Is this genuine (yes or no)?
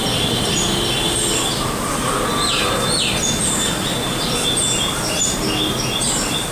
yes